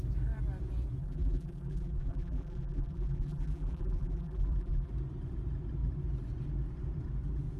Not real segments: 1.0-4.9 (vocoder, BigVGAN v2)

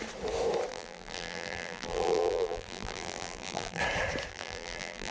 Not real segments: 0.7-3.8 (vocoder, BigVGAN v2); 4.3-5.1